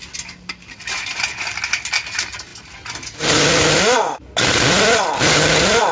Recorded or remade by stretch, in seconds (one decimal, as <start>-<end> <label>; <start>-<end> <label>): 0.0-5.9 recorded